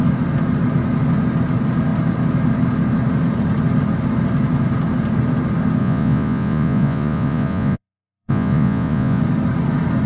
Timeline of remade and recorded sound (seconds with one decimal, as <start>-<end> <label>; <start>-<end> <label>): 0.0-5.8 recorded; 5.8-9.2 remade; 9.2-10.1 recorded